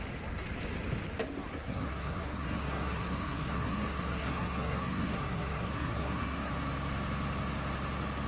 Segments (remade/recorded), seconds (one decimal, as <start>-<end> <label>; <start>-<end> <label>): 0.0-1.5 recorded; 1.5-6.5 remade; 6.5-8.3 recorded